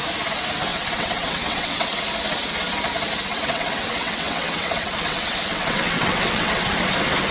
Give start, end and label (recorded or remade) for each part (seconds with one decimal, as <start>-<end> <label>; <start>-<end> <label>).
0.0-0.7 recorded; 0.7-2.0 remade; 2.0-3.3 recorded; 3.3-6.7 remade; 6.7-7.3 recorded